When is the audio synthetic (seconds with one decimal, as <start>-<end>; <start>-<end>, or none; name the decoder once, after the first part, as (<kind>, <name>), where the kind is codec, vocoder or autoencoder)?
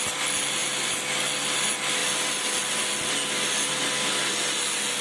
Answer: none